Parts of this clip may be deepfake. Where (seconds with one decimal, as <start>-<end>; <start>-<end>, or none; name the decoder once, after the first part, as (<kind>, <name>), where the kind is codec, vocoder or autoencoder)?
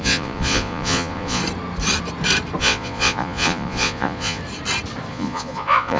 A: 0.0-1.4 (vocoder, Vocos); 2.6-4.4; 5.1-6.0